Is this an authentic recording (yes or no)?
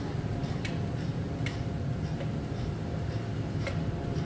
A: no